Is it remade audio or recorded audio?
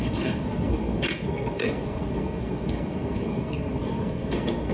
remade